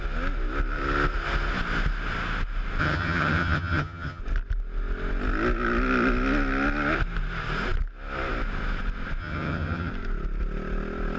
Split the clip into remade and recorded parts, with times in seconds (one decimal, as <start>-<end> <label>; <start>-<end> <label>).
0.0-2.8 recorded; 2.8-4.2 remade; 4.2-9.2 recorded; 9.2-9.9 remade; 9.9-11.2 recorded